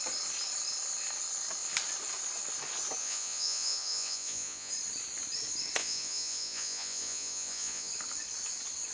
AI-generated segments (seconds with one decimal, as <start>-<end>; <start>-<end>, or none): 3.0-4.7; 5.8-7.9